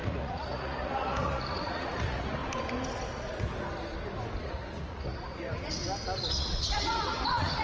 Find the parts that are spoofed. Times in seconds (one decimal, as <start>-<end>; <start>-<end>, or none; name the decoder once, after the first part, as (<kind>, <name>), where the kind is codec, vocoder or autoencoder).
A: 0.0-2.4 (vocoder, Vocos); 4.4-5.8; 6.3-7.6

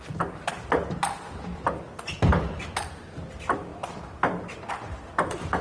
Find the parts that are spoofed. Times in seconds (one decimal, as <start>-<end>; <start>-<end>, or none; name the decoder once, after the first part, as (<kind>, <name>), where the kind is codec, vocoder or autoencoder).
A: none

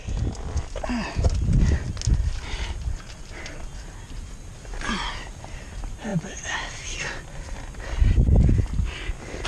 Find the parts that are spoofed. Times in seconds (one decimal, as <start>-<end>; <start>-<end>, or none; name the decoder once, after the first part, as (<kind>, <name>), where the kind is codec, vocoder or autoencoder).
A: none

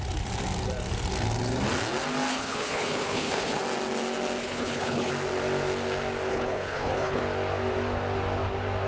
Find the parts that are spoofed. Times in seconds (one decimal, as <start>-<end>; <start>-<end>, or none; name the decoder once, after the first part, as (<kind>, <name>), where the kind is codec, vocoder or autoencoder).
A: 2.3-3.6 (codec, HILCodec); 4.4-5.1; 6.3-7.2

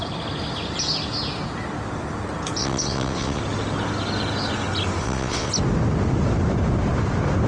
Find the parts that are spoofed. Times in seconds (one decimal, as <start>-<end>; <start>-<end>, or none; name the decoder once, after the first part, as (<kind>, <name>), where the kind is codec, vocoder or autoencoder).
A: 2.6-3.4 (vocoder, WaveNeXt); 5.0-5.5

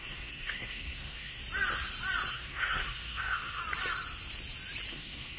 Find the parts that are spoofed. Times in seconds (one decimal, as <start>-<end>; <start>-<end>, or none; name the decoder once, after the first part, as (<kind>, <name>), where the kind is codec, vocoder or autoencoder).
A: 0.0-1.4 (codec, SNAC); 2.3-3.6; 4.9-5.4

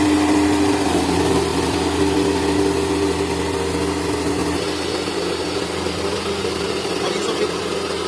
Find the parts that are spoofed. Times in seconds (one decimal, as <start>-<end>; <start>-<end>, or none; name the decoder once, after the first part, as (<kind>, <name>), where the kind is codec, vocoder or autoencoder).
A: none